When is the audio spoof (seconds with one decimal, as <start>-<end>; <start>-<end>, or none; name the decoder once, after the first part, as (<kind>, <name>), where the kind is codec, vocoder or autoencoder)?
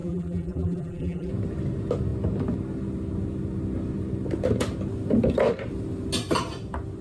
0.0-1.3 (vocoder, BigVGAN v2)